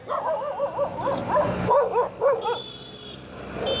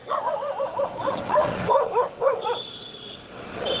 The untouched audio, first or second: first